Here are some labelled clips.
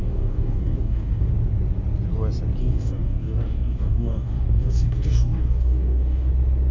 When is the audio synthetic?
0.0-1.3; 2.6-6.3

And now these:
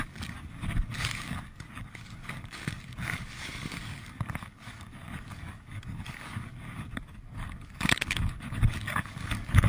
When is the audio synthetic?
0.0-9.7

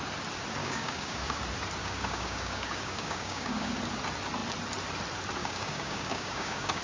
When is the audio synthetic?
0.6-1.4; 1.8-3.7; 5.4-6.8

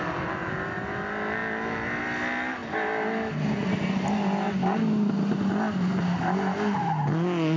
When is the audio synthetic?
none

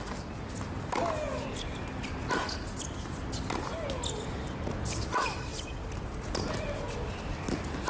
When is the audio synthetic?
none

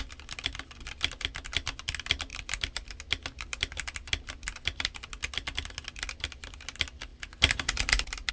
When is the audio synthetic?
none